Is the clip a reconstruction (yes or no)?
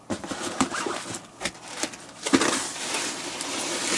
no